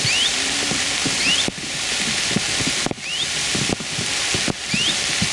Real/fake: real